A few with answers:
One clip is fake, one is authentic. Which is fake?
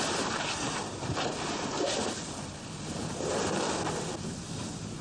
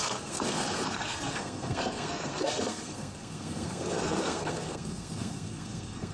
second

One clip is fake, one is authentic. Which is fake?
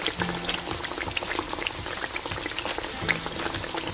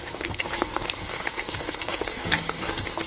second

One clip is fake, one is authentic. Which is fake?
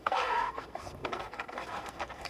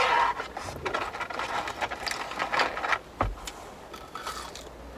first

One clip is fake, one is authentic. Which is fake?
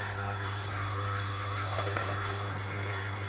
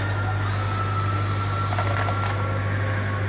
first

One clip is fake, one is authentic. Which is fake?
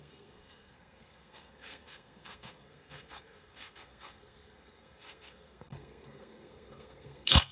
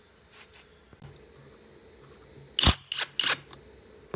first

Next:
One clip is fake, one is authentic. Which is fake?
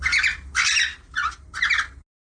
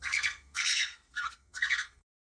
second